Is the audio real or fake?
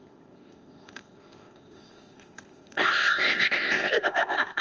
fake